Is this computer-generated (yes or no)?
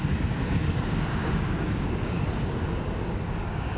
yes